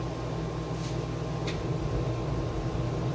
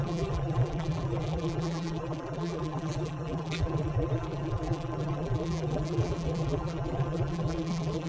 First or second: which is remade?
second